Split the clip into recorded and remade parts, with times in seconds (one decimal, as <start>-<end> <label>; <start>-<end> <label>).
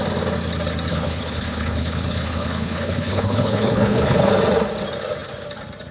0.0-0.9 recorded; 0.9-4.3 remade; 4.3-5.9 recorded